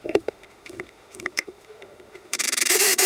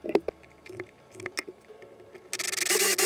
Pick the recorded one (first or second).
second